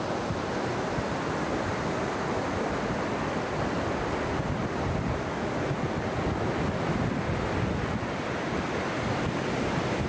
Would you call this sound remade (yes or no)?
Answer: no